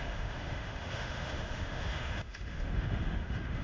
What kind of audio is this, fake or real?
fake